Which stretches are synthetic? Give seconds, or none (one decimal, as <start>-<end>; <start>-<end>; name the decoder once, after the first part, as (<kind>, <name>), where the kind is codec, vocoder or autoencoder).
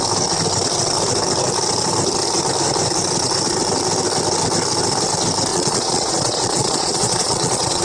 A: 5.5-7.8 (vocoder, Vocos)